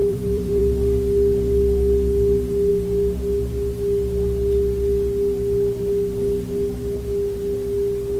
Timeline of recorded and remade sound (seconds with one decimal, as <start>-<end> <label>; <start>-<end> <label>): 0.0-0.6 remade; 0.6-8.2 recorded